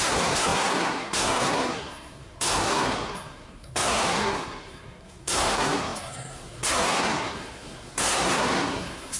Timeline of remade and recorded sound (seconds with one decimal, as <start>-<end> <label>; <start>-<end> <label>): 0.0-9.2 remade